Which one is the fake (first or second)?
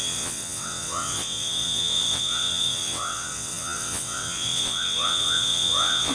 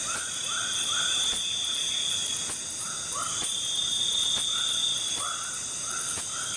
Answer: first